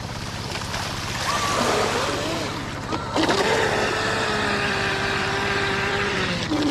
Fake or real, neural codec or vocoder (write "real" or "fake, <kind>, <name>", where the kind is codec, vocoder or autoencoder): fake, vocoder, BigVGAN v2